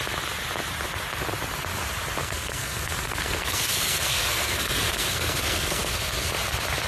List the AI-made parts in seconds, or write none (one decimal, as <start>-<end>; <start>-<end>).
2.2-6.3